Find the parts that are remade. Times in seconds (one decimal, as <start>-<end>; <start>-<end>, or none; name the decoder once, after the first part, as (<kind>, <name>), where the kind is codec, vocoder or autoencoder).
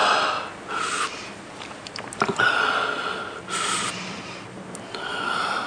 none